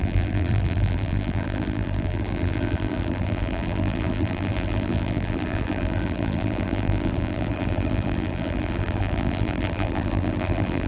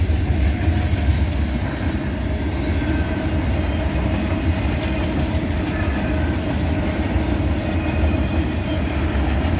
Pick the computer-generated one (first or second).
first